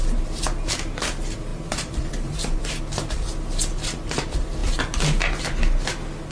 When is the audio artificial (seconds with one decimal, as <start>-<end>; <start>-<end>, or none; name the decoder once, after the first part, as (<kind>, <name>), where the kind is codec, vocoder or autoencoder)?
1.5-2.8 (vocoder, BigVGAN v2)